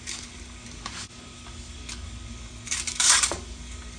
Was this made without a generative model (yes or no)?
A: no